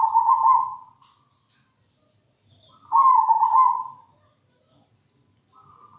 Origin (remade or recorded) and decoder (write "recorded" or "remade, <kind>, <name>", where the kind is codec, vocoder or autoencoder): recorded